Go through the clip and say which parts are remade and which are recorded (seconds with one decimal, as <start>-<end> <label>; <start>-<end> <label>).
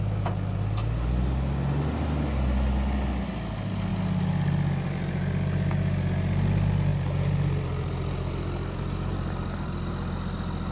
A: 0.0-6.9 recorded; 6.9-9.9 remade; 9.9-10.7 recorded